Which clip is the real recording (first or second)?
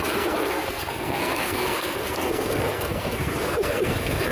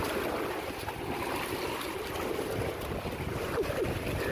second